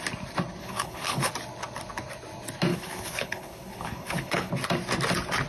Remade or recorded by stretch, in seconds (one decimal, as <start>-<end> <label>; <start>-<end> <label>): 0.0-0.6 recorded; 0.6-1.3 remade; 1.3-2.7 recorded; 2.7-4.5 remade; 4.5-5.5 recorded

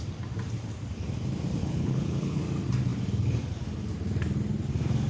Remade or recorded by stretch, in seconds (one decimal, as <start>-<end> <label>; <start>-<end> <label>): 0.0-1.6 recorded; 1.6-2.4 remade; 2.4-5.1 recorded

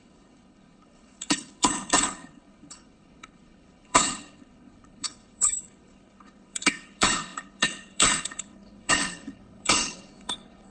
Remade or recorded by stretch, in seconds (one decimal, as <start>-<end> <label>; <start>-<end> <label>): 0.0-10.7 remade

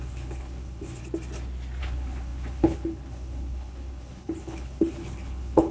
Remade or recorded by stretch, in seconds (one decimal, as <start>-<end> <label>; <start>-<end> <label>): 0.0-1.0 remade; 1.0-1.8 recorded; 1.8-5.7 remade

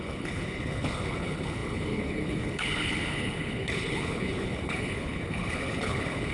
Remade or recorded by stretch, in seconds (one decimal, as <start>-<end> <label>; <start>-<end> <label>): 0.0-6.3 remade